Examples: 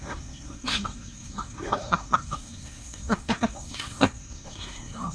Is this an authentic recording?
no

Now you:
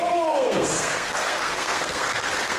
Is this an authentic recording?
no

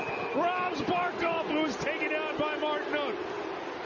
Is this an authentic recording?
yes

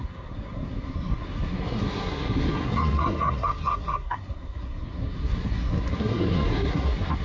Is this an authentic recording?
no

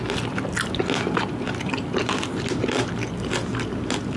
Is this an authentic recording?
yes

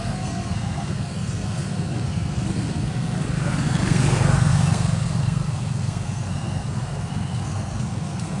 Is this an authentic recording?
no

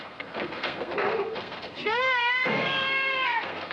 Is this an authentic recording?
no